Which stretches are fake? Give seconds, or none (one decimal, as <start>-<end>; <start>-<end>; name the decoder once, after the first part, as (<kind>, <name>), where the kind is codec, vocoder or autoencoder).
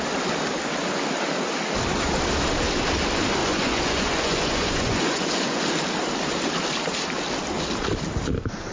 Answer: 3.4-5.6 (vocoder, Vocos)